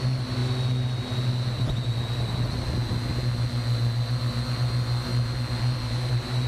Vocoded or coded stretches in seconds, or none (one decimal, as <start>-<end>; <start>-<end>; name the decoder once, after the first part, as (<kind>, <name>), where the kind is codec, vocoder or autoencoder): none